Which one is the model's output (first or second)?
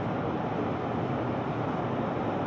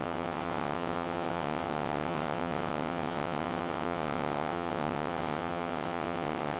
second